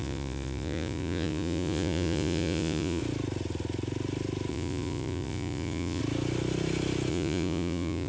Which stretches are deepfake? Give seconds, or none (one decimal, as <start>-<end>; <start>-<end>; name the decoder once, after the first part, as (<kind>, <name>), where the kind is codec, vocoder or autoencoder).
0.0-3.0 (vocoder, Vocos); 4.5-6.0; 7.1-8.1

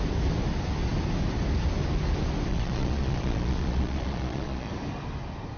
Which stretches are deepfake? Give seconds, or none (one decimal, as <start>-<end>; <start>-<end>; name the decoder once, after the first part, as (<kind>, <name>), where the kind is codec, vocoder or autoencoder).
2.5-4.7 (vocoder, Vocos)

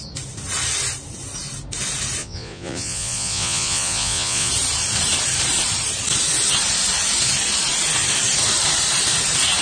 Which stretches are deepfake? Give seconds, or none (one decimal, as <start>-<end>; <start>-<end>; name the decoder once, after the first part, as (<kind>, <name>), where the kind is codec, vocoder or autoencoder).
2.2-4.5 (vocoder, Vocos)

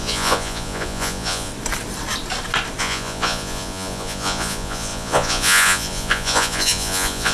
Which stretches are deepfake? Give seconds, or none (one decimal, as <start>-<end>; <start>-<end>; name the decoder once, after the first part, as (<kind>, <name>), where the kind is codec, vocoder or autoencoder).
0.0-1.5 (vocoder, Vocos); 2.8-7.3

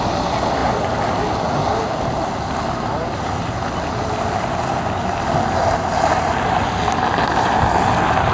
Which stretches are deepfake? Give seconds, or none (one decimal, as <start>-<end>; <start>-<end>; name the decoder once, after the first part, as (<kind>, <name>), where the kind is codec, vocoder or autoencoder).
none